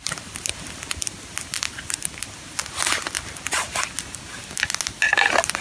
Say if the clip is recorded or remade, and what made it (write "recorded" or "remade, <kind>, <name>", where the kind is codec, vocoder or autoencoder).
recorded